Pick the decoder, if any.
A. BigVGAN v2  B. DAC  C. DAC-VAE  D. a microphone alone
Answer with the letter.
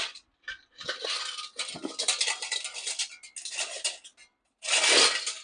D